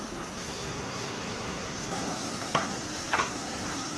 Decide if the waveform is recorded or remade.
remade